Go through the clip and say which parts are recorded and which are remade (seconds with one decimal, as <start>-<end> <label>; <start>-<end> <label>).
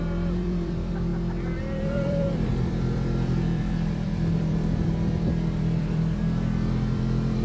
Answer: 0.0-1.1 remade; 1.1-1.6 recorded; 1.6-7.4 remade